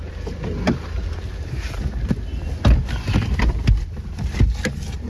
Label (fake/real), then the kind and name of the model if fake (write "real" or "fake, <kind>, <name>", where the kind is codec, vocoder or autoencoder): real